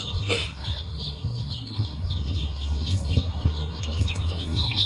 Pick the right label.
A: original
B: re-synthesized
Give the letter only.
B